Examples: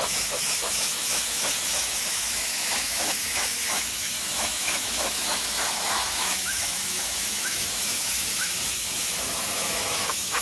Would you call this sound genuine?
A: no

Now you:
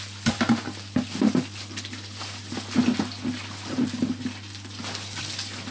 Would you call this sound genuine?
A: yes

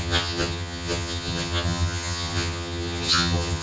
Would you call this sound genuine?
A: no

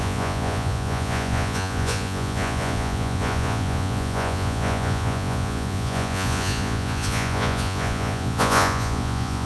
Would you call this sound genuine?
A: no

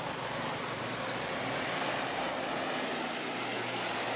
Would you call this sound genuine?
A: yes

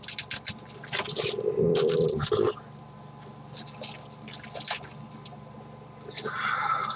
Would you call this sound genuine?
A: yes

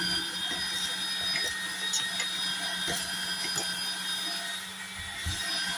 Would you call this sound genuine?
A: yes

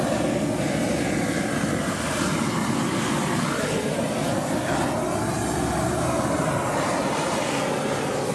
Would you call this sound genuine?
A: yes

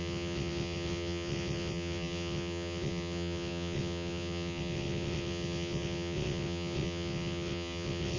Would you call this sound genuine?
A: no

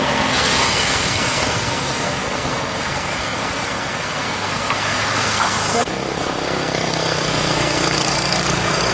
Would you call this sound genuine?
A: no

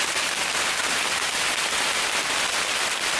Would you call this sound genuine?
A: yes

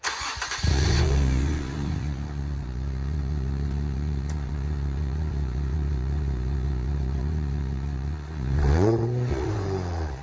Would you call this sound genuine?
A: no